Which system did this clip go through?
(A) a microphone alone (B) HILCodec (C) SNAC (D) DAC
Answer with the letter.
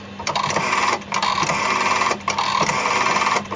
A